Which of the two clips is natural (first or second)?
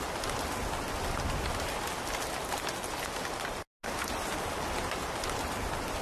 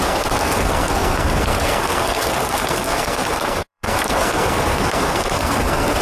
first